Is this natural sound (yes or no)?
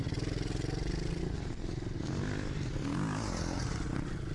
yes